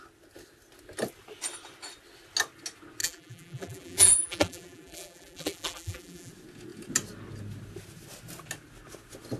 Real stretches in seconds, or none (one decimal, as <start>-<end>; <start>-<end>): 0.0-3.0; 6.3-9.4